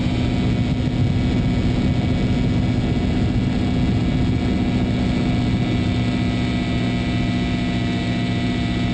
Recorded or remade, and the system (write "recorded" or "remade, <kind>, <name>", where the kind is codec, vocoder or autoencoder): recorded